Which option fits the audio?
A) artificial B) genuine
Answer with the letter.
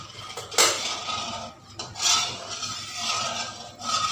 B